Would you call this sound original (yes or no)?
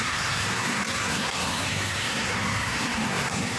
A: no